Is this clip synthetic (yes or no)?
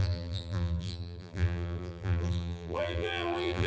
yes